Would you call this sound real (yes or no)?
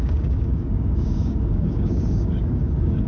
no